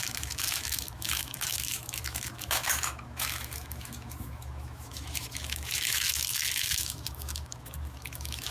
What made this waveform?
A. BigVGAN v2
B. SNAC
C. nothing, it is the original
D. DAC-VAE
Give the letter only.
D